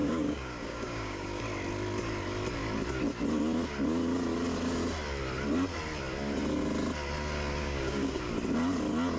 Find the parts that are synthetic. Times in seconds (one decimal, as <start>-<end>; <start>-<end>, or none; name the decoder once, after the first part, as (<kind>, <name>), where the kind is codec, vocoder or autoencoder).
0.0-1.4 (codec, DAC); 7.6-8.3